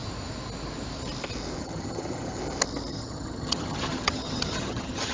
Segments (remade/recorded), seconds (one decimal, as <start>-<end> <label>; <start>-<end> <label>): 0.0-1.6 recorded; 1.6-2.4 remade; 2.4-2.9 recorded; 2.9-5.1 remade